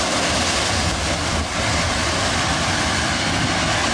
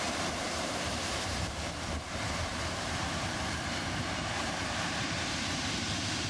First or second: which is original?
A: first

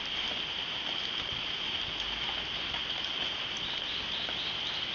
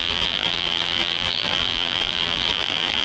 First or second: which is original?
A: first